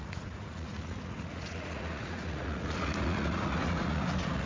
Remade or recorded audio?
remade